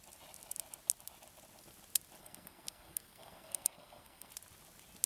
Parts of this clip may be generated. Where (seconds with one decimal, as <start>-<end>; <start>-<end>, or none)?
2.2-4.3